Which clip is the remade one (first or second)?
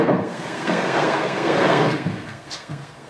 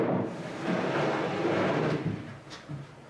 first